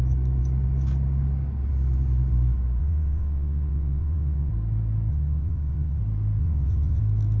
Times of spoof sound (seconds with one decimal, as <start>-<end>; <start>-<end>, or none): 2.8-4.5; 5.1-6.0; 6.4-7.0